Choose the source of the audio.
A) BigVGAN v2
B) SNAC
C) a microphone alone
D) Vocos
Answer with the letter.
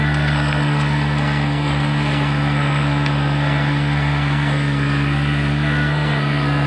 B